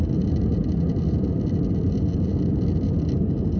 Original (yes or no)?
yes